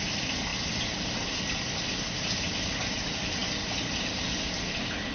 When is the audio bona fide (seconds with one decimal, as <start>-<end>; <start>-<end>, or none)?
0.0-5.1